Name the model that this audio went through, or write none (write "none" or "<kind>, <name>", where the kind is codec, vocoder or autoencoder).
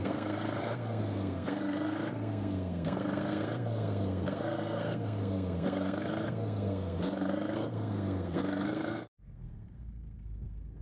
codec, SNAC